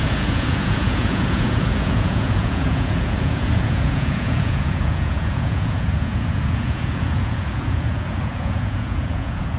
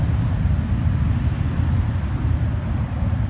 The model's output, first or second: first